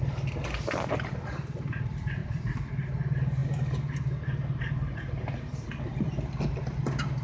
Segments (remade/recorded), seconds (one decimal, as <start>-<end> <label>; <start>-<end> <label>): 0.0-2.2 recorded; 2.2-2.7 remade; 2.7-7.2 recorded

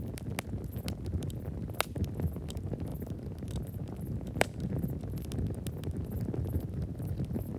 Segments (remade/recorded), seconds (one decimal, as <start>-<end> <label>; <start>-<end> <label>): 0.0-7.6 recorded

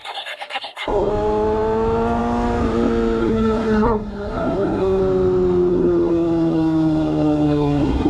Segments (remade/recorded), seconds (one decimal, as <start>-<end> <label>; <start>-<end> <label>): 0.0-1.1 remade; 1.1-3.2 recorded; 3.2-5.0 remade; 5.0-5.7 recorded; 5.7-8.1 remade

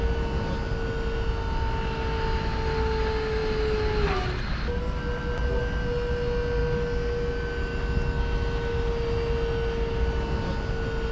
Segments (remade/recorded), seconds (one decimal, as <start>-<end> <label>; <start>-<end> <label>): 0.0-11.1 recorded

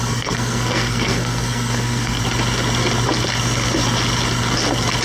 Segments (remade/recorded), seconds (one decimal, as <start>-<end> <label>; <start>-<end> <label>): 0.0-2.2 remade; 2.2-5.0 recorded

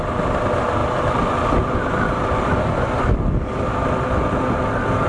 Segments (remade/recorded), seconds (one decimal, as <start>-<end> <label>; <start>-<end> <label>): 0.0-5.1 recorded

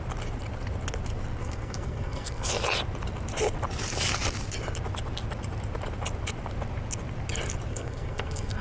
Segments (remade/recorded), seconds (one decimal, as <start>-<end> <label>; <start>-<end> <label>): 0.0-1.4 recorded; 1.4-2.5 remade; 2.5-7.7 recorded; 7.7-8.6 remade